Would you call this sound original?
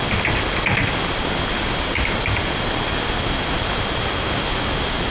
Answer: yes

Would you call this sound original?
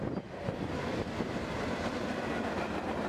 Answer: yes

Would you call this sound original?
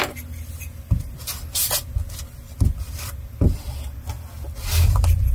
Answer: yes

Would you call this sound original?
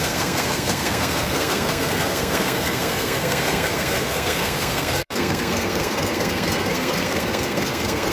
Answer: no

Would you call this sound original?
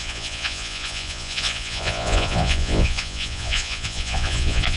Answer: no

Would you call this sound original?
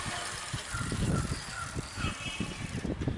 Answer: no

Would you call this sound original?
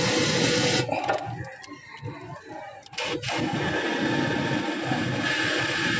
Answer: yes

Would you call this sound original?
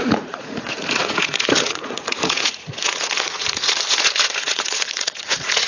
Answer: no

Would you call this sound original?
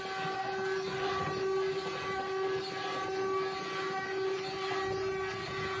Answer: yes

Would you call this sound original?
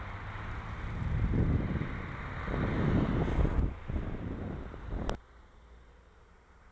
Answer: no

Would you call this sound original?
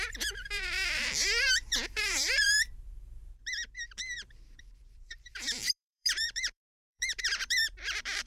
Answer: no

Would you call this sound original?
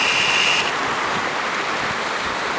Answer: yes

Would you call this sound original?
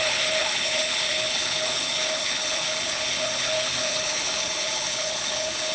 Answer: no